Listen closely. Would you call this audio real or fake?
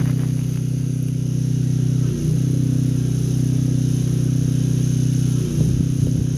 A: real